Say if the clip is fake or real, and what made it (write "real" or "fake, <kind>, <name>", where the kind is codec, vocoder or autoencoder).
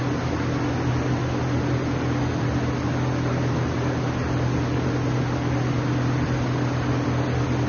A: real